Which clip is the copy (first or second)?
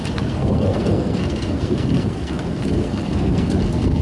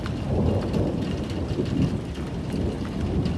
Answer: first